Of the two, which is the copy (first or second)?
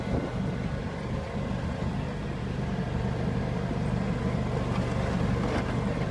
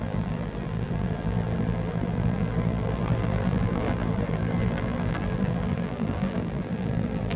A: second